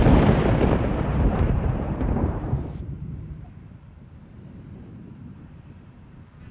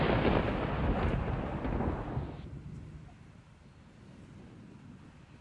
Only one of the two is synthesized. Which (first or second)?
first